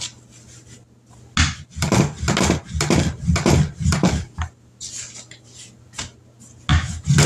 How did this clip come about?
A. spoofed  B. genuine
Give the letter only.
B